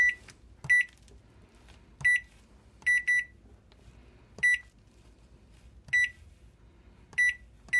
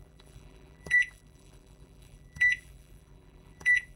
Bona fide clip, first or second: first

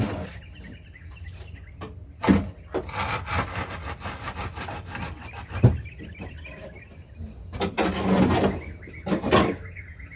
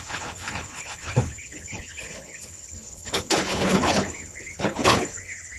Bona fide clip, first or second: first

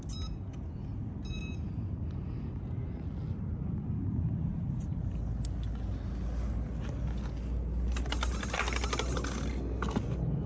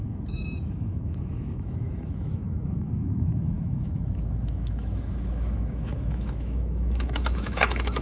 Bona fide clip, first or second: first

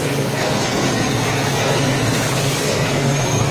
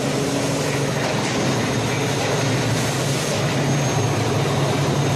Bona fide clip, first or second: second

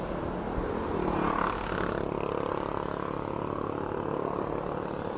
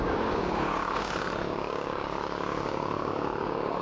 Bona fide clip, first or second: first